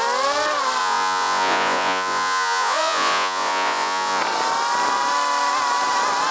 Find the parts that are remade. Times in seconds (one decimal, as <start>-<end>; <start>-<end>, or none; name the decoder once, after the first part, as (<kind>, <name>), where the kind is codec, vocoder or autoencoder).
0.8-4.2 (vocoder, Vocos)